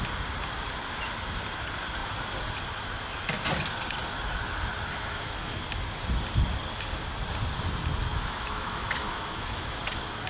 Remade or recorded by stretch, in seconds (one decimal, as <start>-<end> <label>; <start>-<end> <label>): 0.0-4.9 recorded; 4.9-5.6 remade; 5.6-8.1 recorded; 8.1-9.8 remade; 9.8-10.3 recorded